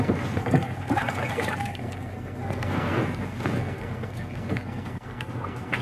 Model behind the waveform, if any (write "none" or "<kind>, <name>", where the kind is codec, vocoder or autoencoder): codec, SNAC